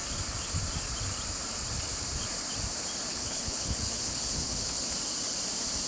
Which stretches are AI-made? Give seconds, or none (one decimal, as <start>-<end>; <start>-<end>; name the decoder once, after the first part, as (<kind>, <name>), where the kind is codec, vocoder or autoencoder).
3.1-4.8 (codec, HILCodec)